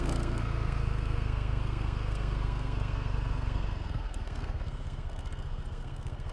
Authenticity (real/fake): fake